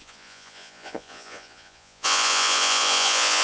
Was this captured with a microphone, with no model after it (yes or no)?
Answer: no